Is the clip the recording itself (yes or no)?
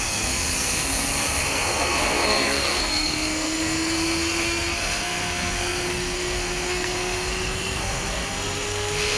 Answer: no